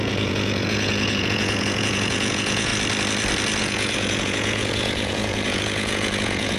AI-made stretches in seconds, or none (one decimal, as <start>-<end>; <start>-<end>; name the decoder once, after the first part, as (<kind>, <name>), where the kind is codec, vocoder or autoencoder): 0.0-2.7 (vocoder, Vocos); 3.6-6.6